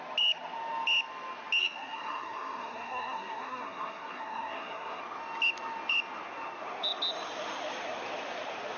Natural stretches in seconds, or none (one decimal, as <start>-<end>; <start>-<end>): 0.0-1.6; 5.0-8.8